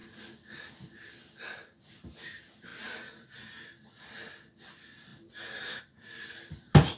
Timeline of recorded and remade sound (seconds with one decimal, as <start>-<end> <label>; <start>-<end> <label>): 0.0-7.0 recorded